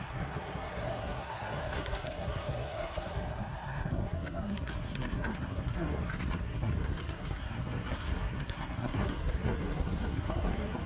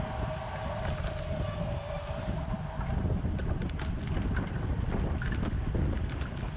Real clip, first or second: second